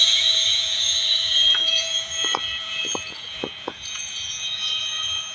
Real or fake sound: fake